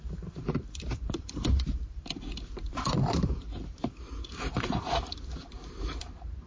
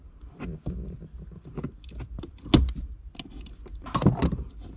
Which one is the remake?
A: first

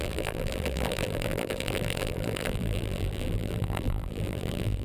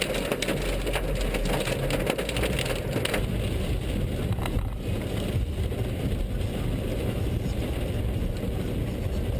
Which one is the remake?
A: first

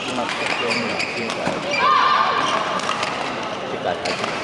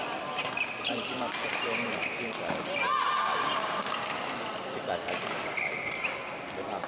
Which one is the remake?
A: first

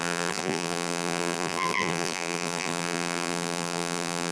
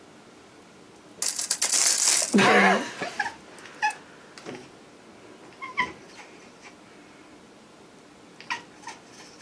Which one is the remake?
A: first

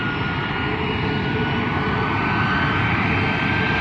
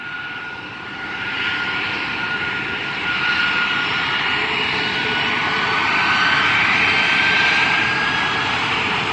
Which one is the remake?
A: second